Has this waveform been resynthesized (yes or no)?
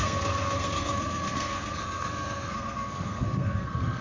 yes